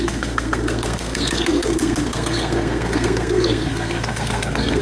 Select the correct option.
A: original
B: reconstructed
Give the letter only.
B